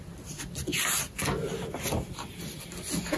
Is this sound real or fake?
real